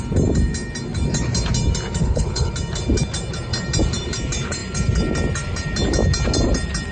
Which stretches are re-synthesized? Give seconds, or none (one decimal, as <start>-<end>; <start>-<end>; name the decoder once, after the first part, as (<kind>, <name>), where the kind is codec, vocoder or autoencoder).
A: 2.0-2.5 (codec, HILCodec)